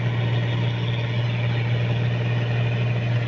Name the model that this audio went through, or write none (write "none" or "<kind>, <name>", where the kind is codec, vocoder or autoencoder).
none